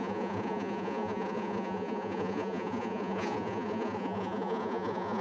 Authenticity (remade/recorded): remade